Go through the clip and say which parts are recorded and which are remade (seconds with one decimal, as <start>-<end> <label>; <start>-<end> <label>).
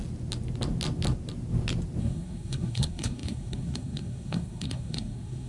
0.0-2.0 recorded; 2.0-5.5 remade